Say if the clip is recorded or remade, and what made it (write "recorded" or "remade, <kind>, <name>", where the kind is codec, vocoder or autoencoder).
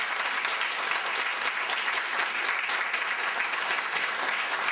recorded